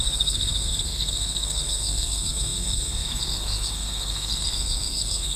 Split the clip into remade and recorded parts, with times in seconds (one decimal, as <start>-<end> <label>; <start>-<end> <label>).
0.0-5.4 remade